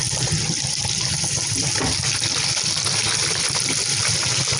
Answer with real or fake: real